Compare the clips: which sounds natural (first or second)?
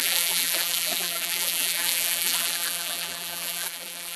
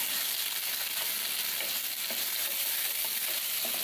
second